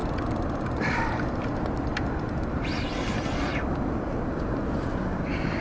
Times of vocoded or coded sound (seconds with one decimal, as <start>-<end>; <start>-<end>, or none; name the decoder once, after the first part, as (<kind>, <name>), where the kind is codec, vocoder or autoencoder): 0.0-3.5 (vocoder, BigVGAN v2); 4.9-5.6